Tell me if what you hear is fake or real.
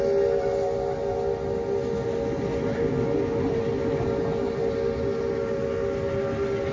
real